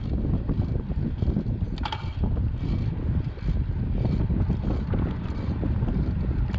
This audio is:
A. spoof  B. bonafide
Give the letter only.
B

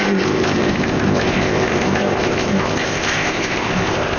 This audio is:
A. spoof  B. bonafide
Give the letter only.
A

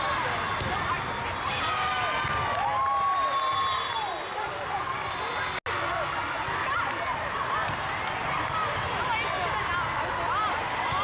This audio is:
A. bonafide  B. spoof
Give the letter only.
A